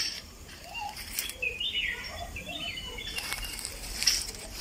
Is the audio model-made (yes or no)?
yes